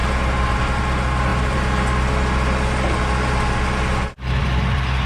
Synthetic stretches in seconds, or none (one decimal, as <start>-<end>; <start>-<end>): none